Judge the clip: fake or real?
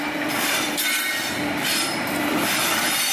fake